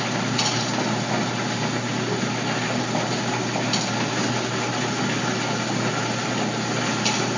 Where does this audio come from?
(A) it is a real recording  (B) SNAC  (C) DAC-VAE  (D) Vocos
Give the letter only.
A